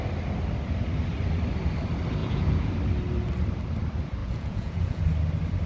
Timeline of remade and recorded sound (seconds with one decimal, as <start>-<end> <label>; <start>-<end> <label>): 0.0-2.2 recorded; 2.2-2.7 remade; 2.7-4.2 recorded; 4.2-5.0 remade; 5.0-5.7 recorded